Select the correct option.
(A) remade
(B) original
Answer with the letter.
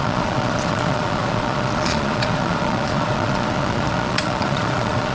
A